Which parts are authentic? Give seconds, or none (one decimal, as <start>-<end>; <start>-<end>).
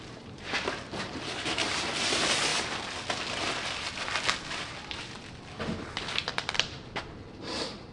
2.5-6.3